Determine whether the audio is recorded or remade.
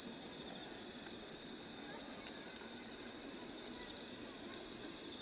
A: recorded